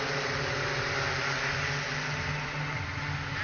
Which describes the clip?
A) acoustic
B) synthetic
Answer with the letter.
A